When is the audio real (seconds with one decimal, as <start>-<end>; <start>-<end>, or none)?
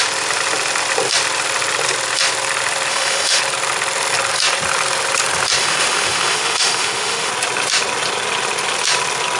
0.0-2.9; 3.4-5.6; 7.3-9.4